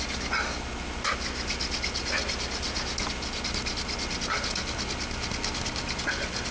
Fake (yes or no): no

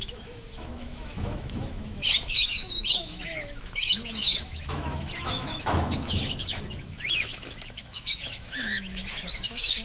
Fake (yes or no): yes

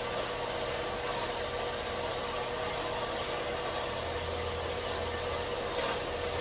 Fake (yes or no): no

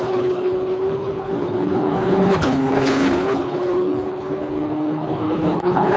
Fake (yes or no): yes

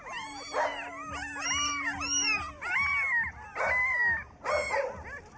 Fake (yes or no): no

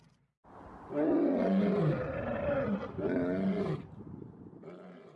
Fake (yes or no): no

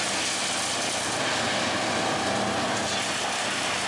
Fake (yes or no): no